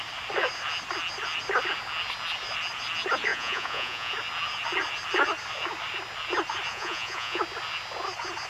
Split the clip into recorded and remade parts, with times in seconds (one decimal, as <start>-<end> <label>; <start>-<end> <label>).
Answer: 0.0-3.3 recorded; 3.3-4.1 remade; 4.1-6.7 recorded; 6.7-7.4 remade; 7.4-8.5 recorded